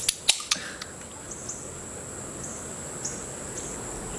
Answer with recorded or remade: recorded